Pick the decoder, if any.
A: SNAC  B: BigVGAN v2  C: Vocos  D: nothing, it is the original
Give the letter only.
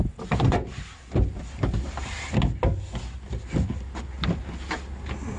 D